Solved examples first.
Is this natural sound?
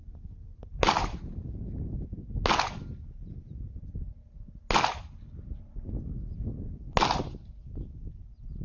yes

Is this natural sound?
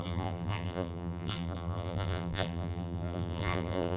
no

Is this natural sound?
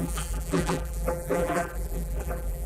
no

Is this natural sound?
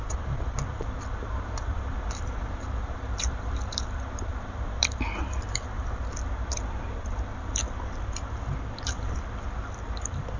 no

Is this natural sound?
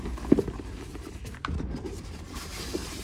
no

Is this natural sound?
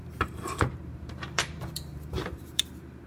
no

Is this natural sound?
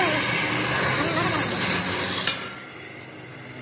yes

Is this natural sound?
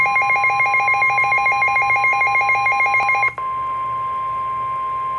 yes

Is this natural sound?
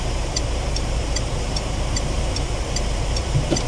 no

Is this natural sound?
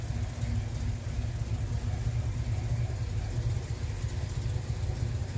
yes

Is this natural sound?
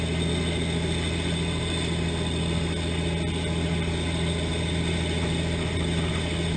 yes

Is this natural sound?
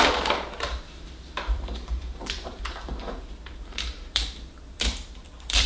no